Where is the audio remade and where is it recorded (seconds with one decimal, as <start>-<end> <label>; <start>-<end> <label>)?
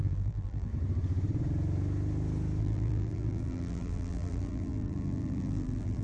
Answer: 0.0-0.7 remade; 0.7-2.6 recorded; 2.6-6.0 remade